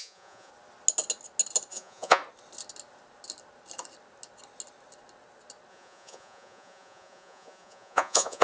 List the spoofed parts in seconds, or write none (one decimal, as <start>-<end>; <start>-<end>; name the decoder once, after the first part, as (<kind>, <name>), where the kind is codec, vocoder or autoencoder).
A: 0.0-0.5 (vocoder, Vocos); 1.7-2.2; 5.7-8.4

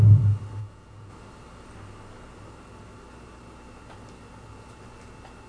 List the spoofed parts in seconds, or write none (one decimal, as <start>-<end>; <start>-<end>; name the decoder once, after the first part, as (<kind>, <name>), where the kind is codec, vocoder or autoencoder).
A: 0.6-1.1 (vocoder, Vocos)

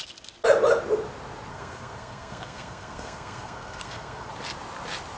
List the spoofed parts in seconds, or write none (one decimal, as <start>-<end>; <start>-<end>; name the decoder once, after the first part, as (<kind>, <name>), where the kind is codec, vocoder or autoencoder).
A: 1.5-4.3 (codec, SNAC)

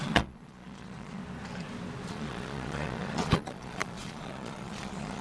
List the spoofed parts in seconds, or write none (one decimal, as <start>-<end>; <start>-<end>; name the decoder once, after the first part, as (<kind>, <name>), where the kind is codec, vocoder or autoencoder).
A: 0.0-1.2 (vocoder, Vocos); 2.1-5.2

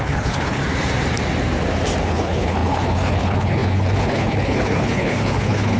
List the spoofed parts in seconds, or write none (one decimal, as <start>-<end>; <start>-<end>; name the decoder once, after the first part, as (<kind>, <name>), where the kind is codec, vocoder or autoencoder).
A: 0.0-0.6 (codec, HILCodec); 2.1-5.8

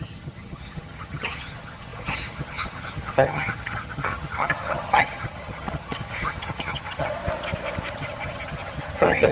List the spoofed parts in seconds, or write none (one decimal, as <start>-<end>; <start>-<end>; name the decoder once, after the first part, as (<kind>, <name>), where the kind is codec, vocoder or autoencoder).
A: 0.0-7.2 (vocoder, HiFi-GAN); 7.9-9.3

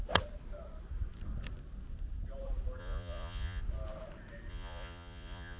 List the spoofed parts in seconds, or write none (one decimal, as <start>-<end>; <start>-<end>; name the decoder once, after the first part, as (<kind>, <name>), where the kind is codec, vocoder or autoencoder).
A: 2.8-3.6 (vocoder, Vocos); 4.5-5.6